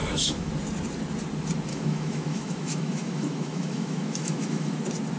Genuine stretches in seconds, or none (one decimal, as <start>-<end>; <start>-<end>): 0.5-1.7; 4.8-5.2